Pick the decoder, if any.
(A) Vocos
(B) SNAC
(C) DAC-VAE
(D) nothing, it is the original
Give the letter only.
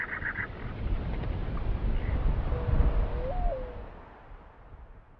D